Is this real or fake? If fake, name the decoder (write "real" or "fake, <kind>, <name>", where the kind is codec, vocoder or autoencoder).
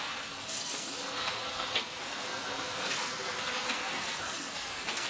fake, codec, SNAC